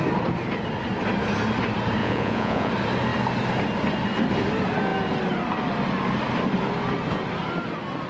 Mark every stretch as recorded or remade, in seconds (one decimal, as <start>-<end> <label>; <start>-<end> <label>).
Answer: 0.0-2.0 recorded; 2.0-2.7 remade; 2.7-8.1 recorded